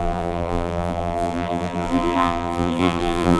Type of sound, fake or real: fake